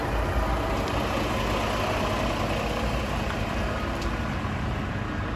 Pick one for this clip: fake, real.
real